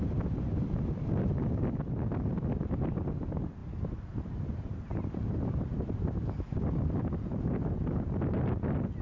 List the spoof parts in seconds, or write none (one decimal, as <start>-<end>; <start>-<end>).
none